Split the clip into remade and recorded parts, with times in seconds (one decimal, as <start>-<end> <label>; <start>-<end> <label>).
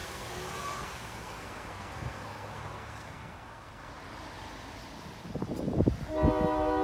0.0-3.9 remade; 3.9-6.8 recorded